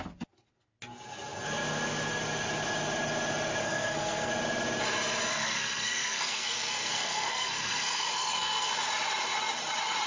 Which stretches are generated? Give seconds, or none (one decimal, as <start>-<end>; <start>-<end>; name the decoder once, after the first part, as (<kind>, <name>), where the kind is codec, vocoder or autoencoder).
3.6-4.3 (codec, SNAC); 5.3-8.7